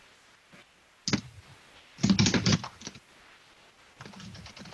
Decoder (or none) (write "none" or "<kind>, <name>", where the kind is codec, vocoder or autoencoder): none